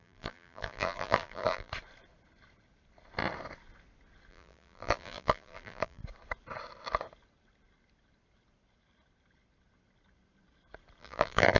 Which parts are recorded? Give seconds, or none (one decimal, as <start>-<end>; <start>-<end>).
1.7-4.3; 6.0-11.0